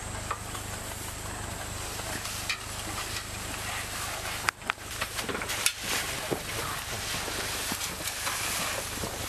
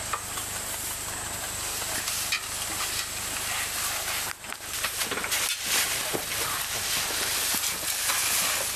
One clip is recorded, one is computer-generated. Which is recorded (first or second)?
second